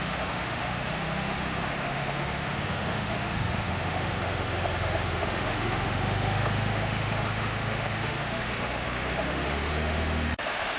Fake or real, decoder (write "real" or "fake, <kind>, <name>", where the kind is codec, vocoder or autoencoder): fake, autoencoder, DAC-VAE